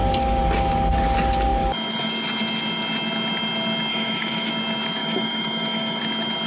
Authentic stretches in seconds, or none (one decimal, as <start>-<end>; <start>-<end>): 0.0-3.9; 4.5-5.0; 6.0-6.5